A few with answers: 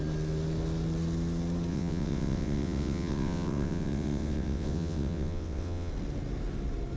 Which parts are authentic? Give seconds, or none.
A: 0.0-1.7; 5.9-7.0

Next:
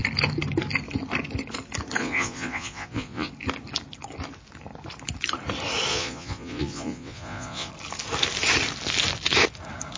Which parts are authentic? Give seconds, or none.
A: 0.0-2.0; 3.3-5.9; 7.7-10.0